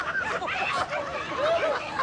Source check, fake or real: fake